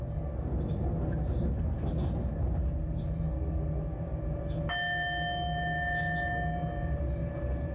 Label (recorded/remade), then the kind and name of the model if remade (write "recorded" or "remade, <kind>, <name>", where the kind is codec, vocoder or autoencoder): recorded